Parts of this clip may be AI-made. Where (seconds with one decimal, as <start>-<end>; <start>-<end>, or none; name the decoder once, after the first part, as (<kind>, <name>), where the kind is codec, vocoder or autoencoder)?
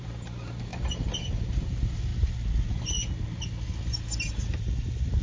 0.0-2.1 (vocoder, BigVGAN v2); 4.3-5.2